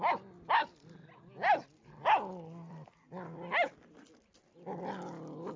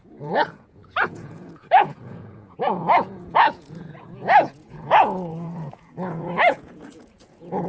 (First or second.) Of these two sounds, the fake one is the second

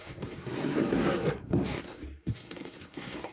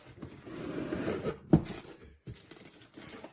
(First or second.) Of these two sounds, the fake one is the first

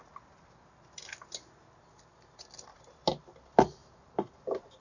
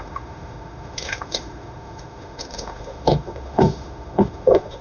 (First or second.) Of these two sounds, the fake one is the second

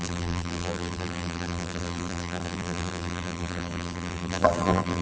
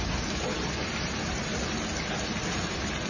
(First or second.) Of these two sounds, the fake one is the first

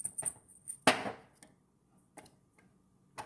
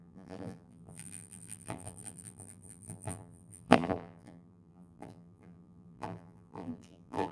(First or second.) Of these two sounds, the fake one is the second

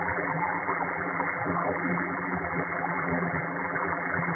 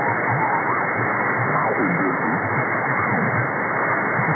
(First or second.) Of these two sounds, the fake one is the first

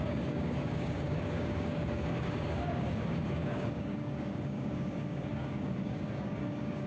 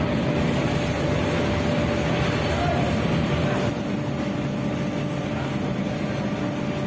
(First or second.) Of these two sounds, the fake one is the first